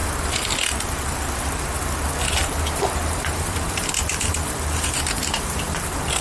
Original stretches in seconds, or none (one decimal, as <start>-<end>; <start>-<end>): 0.0-2.4